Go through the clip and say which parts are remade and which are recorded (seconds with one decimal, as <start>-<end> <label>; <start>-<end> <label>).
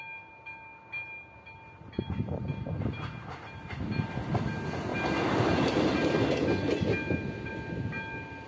0.0-8.5 recorded